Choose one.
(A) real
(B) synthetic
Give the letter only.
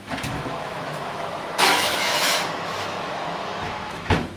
B